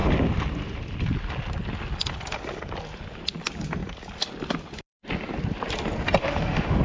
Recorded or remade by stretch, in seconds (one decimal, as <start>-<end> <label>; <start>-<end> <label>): 0.0-6.2 recorded; 6.2-6.8 remade